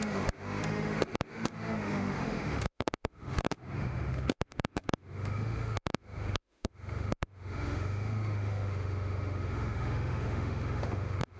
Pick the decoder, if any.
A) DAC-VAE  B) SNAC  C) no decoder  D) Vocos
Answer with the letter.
A